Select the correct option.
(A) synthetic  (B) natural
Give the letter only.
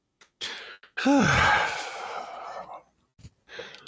B